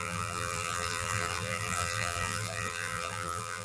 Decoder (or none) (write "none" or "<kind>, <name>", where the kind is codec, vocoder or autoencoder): vocoder, BigVGAN v2